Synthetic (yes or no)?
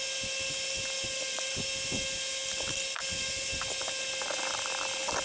no